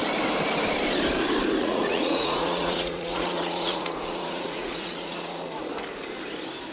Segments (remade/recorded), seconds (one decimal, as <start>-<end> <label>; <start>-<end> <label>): 0.0-1.6 recorded; 1.6-5.6 remade; 5.6-6.7 recorded